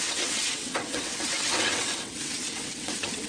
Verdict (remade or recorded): remade